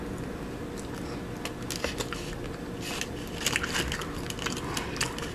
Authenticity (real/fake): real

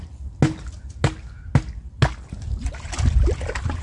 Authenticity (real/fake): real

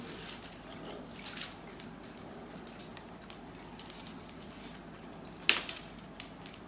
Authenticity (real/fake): real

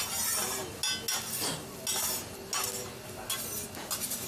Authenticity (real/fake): real